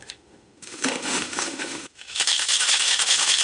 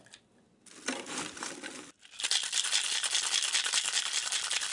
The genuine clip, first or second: second